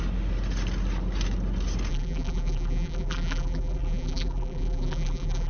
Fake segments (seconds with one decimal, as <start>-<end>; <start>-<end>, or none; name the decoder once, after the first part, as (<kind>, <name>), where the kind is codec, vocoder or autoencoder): 1.9-5.5 (vocoder, BigVGAN v2)